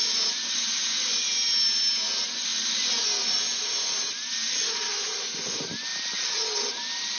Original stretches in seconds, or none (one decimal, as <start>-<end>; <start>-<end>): 0.0-7.2